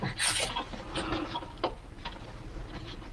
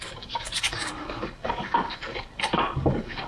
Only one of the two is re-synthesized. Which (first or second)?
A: second